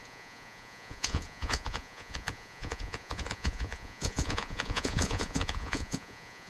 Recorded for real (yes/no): no